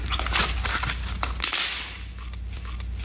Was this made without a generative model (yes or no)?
yes